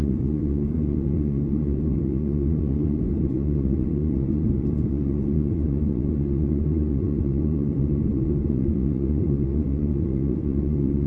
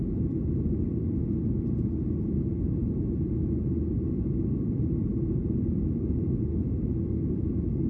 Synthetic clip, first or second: first